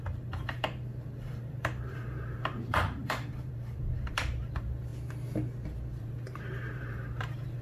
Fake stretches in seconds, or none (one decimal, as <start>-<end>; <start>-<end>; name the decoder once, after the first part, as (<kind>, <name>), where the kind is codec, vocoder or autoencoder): 0.0-4.9 (vocoder, BigVGAN v2); 6.0-7.6

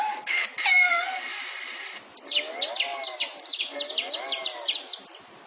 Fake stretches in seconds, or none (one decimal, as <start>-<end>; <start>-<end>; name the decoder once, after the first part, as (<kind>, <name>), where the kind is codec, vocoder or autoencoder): 1.3-1.9 (vocoder, BigVGAN v2); 2.9-3.6

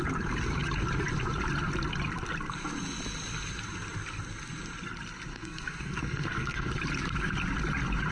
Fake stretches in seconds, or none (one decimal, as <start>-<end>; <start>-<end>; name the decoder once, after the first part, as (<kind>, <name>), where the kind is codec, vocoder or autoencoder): 5.3-6.7 (codec, SNAC)

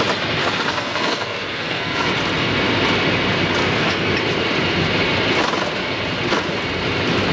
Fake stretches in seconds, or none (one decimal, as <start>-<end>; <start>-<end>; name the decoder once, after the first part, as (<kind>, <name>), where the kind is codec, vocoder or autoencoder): 0.4-2.1 (codec, SNAC); 3.6-4.1

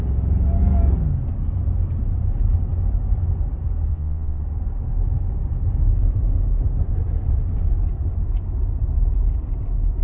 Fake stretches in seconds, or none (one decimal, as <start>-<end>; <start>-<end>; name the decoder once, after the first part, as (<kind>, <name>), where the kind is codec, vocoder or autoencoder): 3.9-4.4 (vocoder, Vocos)

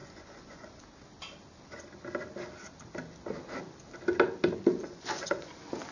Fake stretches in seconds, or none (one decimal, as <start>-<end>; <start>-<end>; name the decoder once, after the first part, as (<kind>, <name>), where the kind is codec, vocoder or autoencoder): 0.0-0.8 (vocoder, Vocos); 4.8-5.5

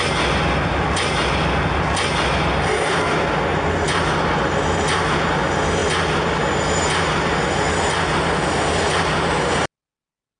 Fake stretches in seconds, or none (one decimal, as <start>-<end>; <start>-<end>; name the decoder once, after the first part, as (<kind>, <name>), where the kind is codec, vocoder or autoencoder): none